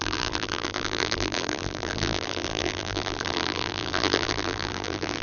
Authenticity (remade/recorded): remade